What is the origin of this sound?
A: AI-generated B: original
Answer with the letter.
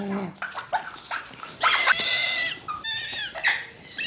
B